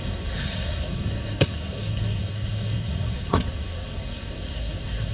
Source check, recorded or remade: remade